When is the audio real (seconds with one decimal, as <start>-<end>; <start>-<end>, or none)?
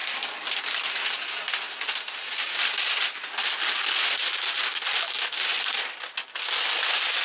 0.0-7.2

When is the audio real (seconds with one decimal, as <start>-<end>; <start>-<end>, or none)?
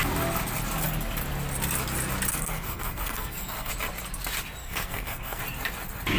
0.0-2.3; 3.7-4.6; 5.4-6.2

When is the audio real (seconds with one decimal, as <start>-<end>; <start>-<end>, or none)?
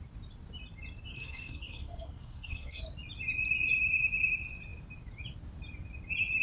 0.0-1.1; 2.8-6.4